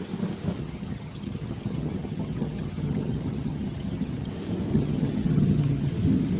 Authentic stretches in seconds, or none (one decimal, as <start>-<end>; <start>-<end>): 0.0-0.6; 4.3-4.7; 5.9-6.4